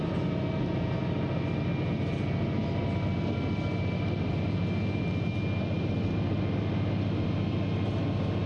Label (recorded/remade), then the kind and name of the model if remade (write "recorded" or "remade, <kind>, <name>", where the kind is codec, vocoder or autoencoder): recorded